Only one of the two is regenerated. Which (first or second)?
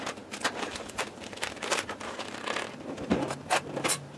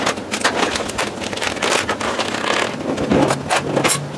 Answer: first